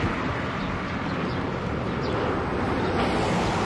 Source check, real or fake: real